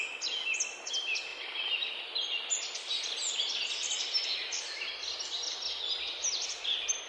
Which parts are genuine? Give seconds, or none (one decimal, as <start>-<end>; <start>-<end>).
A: 0.0-7.1